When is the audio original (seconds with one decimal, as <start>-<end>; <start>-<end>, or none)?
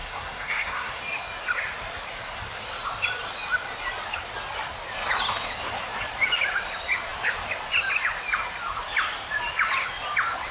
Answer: 1.0-10.5